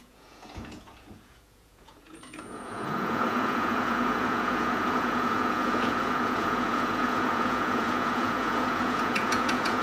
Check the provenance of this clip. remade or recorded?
remade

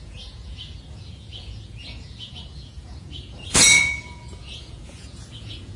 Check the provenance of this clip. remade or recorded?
remade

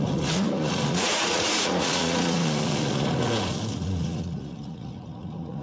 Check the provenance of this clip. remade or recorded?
remade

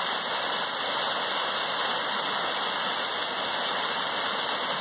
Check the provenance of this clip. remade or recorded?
recorded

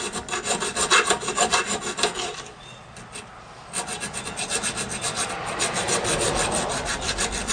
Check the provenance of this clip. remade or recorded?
recorded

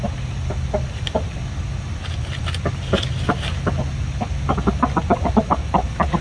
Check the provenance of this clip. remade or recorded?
recorded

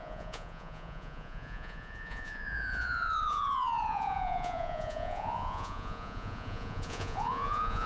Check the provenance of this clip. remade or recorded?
remade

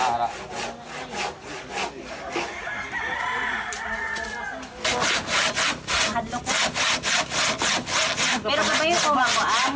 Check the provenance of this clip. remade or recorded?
recorded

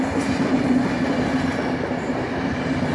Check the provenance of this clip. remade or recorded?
recorded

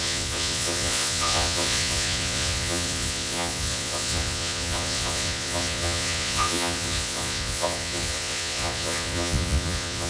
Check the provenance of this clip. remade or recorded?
remade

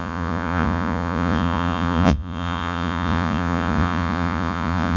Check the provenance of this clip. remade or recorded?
remade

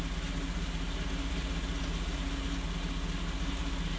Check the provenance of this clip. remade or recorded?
recorded